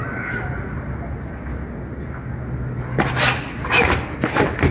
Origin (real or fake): real